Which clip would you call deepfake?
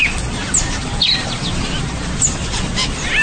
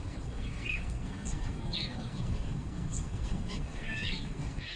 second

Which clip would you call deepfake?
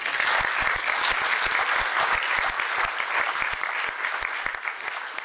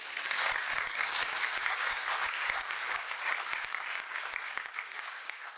second